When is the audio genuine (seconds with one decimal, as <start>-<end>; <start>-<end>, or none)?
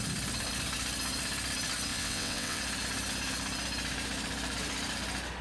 0.0-1.9; 2.6-5.4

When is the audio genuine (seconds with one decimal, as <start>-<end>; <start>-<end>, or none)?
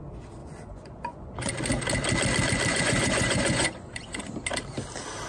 0.0-0.4; 1.5-2.7; 4.2-5.3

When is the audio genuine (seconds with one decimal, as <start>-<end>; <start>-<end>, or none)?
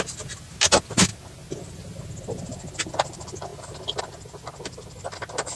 0.0-5.6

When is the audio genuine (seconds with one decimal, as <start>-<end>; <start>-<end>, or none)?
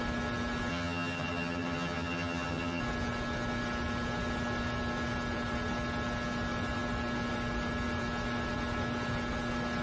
0.0-0.7; 2.8-9.8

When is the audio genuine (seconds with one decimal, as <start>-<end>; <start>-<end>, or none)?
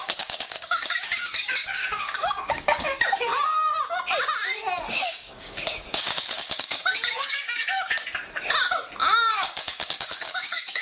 3.3-4.9; 8.0-9.0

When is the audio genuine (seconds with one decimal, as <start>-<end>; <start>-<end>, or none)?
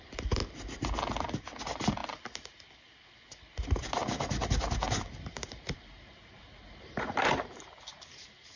0.4-1.6; 2.0-5.2